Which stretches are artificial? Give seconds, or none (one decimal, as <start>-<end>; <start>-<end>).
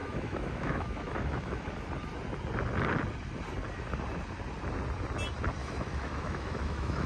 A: 0.0-1.7; 5.6-7.1